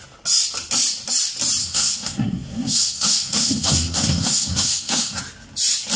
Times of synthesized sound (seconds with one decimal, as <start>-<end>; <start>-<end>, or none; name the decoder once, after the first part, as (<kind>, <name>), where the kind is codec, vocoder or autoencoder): 1.6-5.2 (codec, SNAC)